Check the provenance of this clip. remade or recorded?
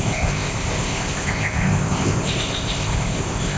remade